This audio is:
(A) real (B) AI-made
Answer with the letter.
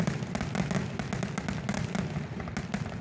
A